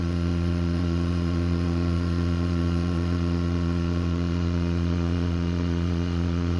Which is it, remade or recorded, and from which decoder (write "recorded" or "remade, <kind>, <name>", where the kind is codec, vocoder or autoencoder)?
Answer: remade, vocoder, Vocos